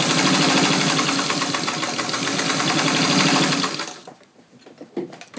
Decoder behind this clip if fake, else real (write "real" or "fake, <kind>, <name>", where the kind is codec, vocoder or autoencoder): real